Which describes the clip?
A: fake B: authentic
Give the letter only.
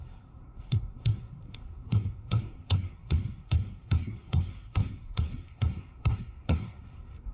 A